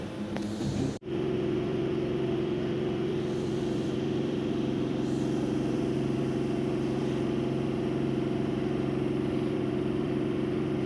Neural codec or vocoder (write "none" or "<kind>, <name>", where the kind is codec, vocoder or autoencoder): vocoder, BigVGAN v2